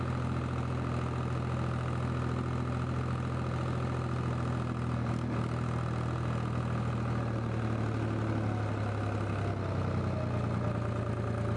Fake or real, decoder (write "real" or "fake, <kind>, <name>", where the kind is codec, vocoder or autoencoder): real